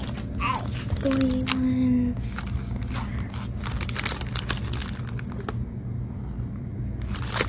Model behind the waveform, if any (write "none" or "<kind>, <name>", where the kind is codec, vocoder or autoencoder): none